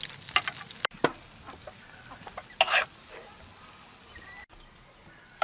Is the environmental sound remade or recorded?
recorded